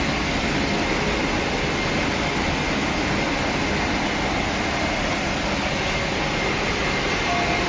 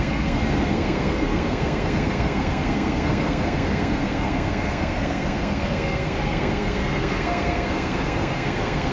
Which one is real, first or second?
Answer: first